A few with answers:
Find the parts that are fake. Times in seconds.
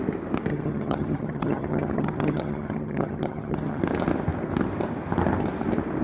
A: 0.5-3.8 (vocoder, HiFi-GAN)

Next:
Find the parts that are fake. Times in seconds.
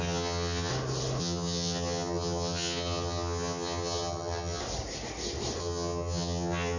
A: 0.0-0.7 (vocoder, HiFi-GAN); 1.2-4.6; 5.6-6.8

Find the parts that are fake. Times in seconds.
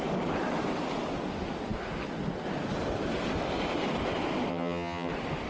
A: 4.5-5.1 (vocoder, HiFi-GAN)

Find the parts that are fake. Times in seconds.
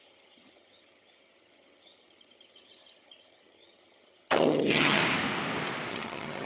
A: 0.0-5.0 (vocoder, HiFi-GAN); 5.9-6.5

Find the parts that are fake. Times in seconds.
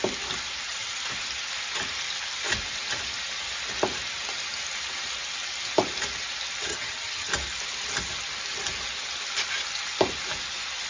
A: 6.7-7.3 (vocoder, HiFi-GAN)